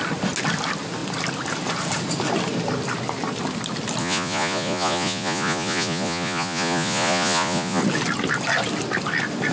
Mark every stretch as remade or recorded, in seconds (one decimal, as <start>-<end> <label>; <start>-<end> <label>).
0.0-4.0 recorded; 4.0-7.8 remade; 7.8-9.5 recorded